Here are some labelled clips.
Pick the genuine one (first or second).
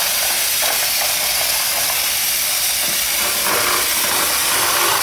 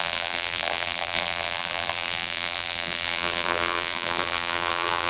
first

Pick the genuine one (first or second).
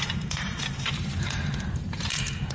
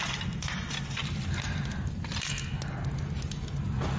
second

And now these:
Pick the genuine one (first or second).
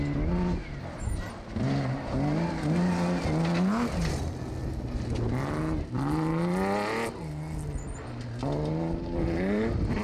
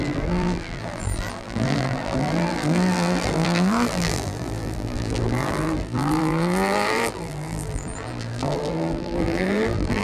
first